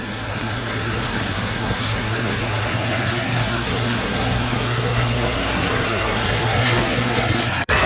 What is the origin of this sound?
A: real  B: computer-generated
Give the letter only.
B